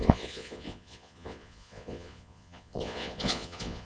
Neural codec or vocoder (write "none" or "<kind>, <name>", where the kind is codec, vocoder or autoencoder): vocoder, Vocos